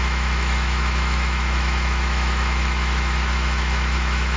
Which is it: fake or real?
fake